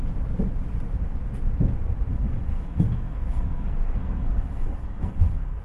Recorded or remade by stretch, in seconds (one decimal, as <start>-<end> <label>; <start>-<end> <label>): 0.0-2.1 recorded; 2.1-5.6 remade